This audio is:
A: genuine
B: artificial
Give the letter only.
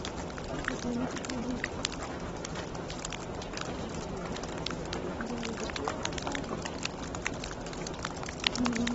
A